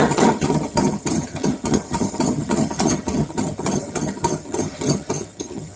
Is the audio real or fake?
fake